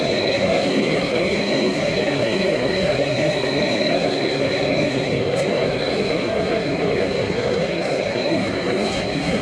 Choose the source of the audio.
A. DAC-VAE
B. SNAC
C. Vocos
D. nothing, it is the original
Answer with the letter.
B